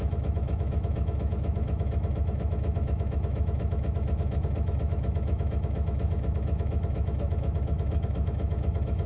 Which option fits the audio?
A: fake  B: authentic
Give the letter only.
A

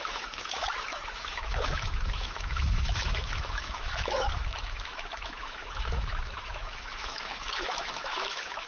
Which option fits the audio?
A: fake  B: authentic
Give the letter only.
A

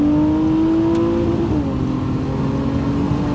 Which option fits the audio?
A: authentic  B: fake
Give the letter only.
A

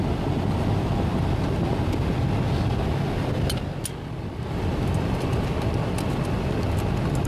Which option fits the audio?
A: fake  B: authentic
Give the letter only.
B